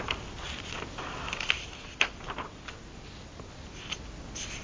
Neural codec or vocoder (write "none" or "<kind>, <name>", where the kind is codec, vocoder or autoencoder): none